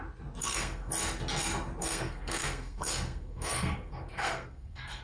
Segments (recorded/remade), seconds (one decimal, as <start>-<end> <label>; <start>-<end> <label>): 0.0-0.4 recorded; 0.4-0.9 remade; 0.9-1.8 recorded; 1.8-5.0 remade